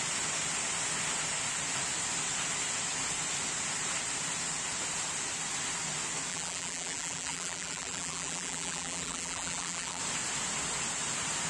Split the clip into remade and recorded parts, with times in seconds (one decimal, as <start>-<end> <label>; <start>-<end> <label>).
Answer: 0.0-6.3 recorded; 6.3-10.0 remade; 10.0-11.5 recorded